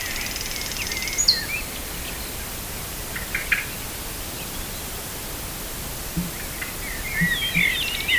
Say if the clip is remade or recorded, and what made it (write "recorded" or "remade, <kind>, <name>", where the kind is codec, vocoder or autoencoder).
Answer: recorded